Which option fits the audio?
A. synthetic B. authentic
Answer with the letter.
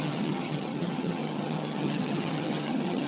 A